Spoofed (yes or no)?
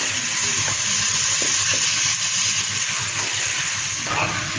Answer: no